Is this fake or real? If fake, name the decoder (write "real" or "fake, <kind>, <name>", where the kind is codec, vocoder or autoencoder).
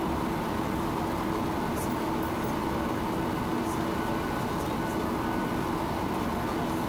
real